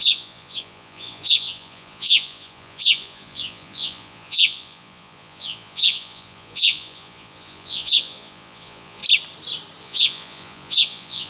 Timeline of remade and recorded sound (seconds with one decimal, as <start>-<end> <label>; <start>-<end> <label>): 0.0-9.0 remade; 9.0-9.8 recorded; 9.8-11.3 remade